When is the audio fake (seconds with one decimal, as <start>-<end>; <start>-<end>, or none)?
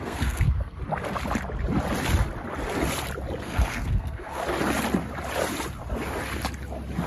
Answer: 0.0-0.8; 3.4-4.4